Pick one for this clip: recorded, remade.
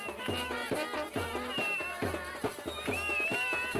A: recorded